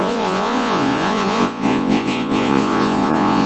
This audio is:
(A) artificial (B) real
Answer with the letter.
A